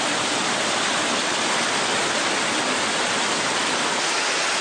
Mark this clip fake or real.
real